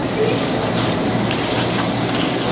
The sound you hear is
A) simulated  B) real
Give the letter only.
B